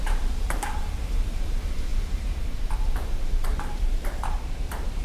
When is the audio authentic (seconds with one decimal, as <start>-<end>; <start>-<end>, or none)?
none